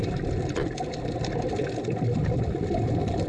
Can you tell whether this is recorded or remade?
recorded